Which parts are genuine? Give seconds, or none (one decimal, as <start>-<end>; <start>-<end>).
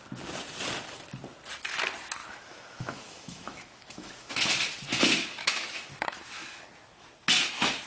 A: 0.0-2.2; 4.3-5.4; 6.6-7.9